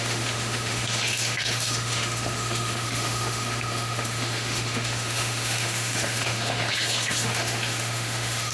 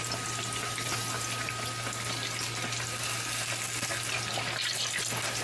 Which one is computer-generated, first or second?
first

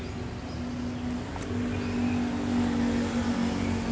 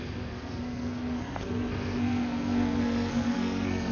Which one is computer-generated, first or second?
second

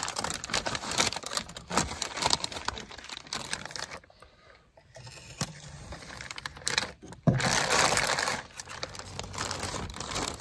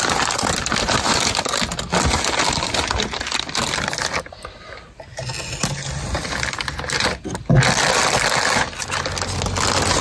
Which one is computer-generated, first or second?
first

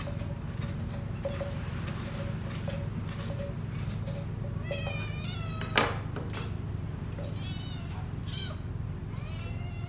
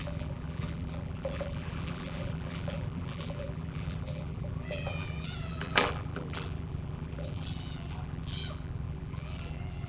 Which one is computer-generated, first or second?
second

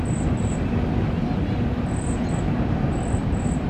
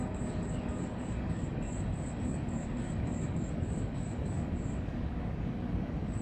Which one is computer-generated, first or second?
second